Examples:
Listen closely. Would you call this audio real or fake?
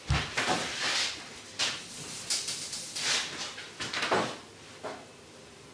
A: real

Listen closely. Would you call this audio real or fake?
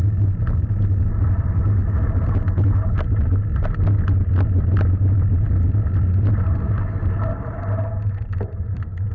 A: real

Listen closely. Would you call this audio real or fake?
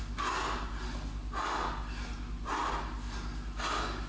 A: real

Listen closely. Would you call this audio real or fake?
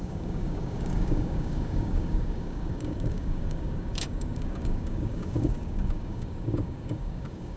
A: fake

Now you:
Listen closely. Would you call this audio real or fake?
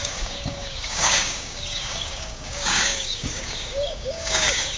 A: fake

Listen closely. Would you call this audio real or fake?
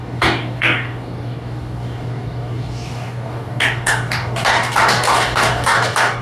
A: fake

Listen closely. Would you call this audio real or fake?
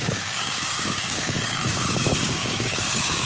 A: fake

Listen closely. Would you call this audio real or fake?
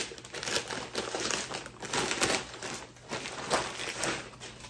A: real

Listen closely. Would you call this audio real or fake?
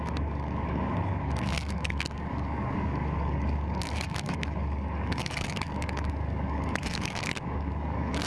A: fake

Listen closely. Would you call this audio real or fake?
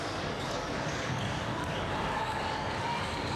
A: fake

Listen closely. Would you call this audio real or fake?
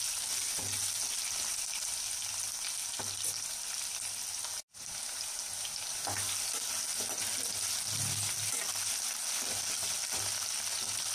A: real